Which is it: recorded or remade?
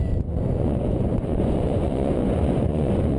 remade